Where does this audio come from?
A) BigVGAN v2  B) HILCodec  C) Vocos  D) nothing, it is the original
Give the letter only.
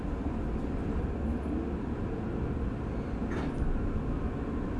D